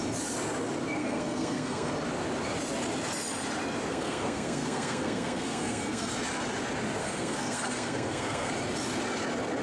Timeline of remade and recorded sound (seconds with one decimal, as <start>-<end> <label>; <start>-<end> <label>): 0.0-1.0 recorded; 1.0-1.9 remade; 1.9-3.9 recorded; 3.9-6.1 remade; 6.1-7.0 recorded; 7.0-8.5 remade; 8.5-9.6 recorded